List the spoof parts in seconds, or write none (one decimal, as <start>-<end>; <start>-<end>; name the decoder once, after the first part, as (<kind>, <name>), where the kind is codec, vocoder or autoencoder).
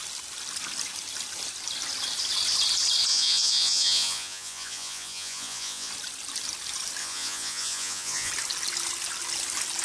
3.1-5.9 (vocoder, Vocos); 7.0-8.3